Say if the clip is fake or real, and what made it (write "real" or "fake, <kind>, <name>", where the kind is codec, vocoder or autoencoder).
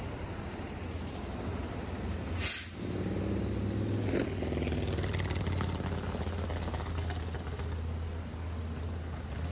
real